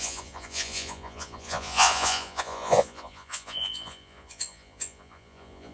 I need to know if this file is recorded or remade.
remade